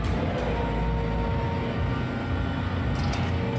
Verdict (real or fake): real